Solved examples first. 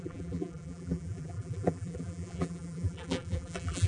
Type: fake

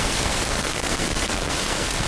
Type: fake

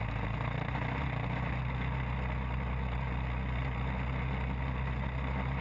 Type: real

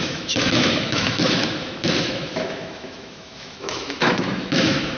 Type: fake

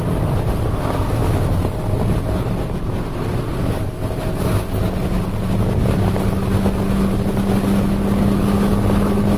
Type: real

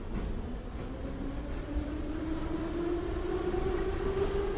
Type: real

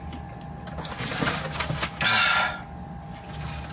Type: real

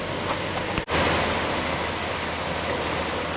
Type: real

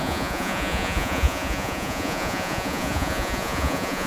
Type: fake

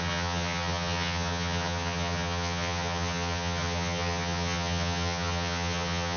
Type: fake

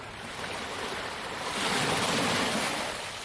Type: real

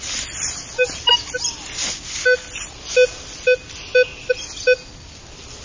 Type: real